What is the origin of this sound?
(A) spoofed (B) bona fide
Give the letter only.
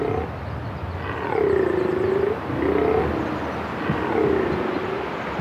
B